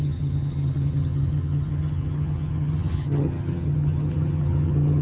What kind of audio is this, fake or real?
fake